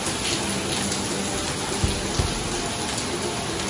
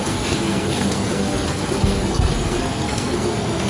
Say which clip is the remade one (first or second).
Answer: second